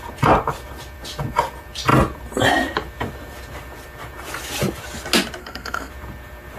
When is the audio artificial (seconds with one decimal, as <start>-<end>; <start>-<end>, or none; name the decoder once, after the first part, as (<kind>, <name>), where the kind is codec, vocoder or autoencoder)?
5.4-5.9 (codec, SNAC)